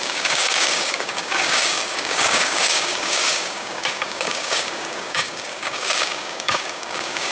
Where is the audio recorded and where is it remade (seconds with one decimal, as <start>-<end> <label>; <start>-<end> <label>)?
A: 0.0-7.3 remade